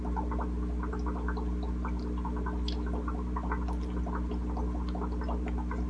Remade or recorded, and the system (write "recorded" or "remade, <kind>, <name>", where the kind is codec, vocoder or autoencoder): recorded